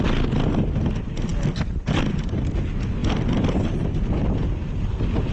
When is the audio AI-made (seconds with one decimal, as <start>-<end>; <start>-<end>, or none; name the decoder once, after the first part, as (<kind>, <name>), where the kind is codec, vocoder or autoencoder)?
none